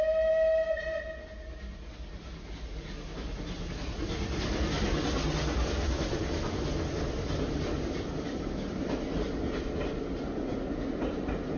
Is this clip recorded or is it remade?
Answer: recorded